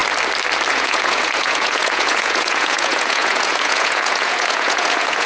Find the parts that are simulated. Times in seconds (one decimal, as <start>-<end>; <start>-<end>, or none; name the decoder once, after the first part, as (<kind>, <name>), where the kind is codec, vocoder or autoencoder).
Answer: 0.7-5.3 (vocoder, Vocos)

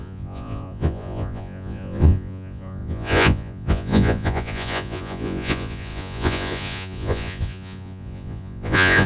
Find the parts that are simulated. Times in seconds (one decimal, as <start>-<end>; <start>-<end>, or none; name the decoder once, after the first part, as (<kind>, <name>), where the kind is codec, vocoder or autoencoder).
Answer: 0.0-9.1 (vocoder, Vocos)

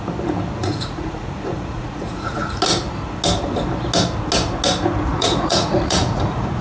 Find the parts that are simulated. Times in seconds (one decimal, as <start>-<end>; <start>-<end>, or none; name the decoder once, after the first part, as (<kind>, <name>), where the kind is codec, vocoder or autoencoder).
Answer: 0.6-2.6 (vocoder, Vocos); 5.1-6.6

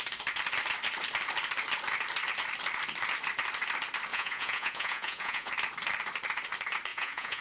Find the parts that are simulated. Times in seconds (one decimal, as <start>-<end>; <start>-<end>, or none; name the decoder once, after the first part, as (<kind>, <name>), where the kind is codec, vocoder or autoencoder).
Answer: 4.1-5.5 (vocoder, Vocos); 6.9-7.4

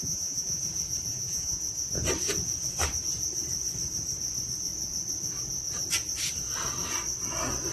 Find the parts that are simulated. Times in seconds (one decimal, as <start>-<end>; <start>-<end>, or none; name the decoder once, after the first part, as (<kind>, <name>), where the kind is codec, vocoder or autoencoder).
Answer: 0.0-0.6 (vocoder, Vocos); 1.1-1.6